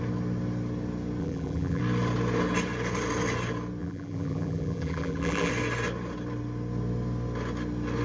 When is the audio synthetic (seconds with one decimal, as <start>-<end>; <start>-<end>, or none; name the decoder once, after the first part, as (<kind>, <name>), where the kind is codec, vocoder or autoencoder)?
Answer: 1.2-1.8 (vocoder, BigVGAN v2); 3.8-5.5